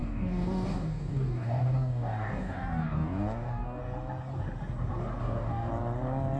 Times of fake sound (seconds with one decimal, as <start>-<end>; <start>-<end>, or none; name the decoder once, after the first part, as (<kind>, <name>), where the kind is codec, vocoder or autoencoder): 0.0-3.8 (codec, DAC); 5.2-5.7